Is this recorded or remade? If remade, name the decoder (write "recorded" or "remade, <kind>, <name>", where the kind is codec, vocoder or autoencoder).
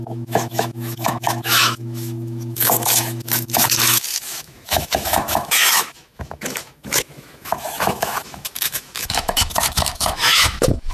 remade, autoencoder, DAC-VAE